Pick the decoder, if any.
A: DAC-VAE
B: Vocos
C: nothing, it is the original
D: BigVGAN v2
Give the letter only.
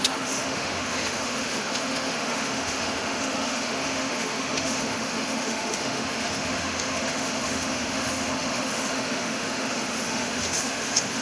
A